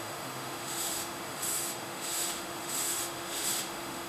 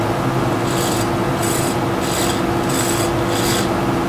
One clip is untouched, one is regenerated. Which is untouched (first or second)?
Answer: second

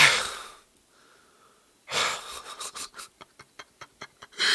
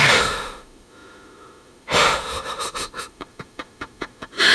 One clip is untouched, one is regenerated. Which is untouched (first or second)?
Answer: first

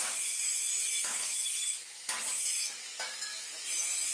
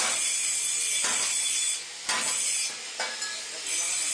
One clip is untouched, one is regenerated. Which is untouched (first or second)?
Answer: second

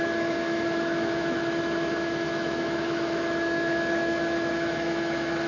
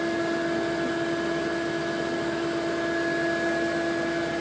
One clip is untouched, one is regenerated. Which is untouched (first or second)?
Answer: second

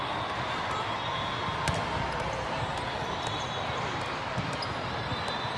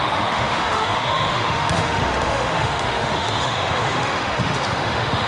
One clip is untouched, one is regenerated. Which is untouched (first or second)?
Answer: first